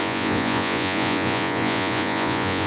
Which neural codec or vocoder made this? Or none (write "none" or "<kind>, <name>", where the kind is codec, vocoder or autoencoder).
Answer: vocoder, Vocos